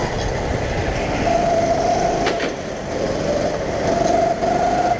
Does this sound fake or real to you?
real